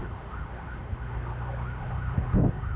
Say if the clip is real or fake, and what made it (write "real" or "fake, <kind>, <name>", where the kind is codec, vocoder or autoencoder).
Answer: fake, autoencoder, DAC-VAE